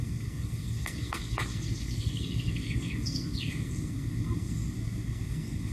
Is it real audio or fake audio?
fake